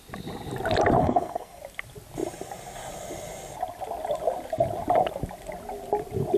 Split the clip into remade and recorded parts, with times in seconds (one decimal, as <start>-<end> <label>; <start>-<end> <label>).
0.0-1.0 recorded; 1.0-1.6 remade; 1.6-6.4 recorded

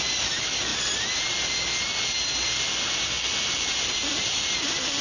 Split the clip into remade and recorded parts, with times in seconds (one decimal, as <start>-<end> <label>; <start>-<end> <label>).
0.0-5.0 recorded

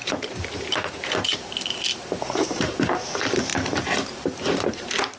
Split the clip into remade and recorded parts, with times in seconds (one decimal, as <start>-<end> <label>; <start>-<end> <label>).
0.0-3.1 remade; 3.1-5.2 recorded

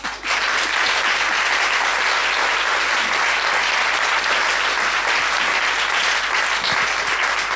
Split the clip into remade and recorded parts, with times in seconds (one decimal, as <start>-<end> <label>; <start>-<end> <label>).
0.0-7.6 recorded

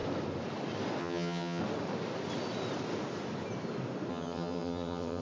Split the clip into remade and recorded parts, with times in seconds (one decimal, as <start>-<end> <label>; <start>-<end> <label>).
0.0-1.0 recorded; 1.0-1.6 remade; 1.6-4.1 recorded; 4.1-5.2 remade

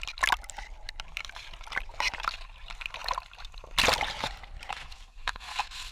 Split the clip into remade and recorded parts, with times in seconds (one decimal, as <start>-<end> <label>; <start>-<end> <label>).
0.0-4.7 recorded; 4.7-5.9 remade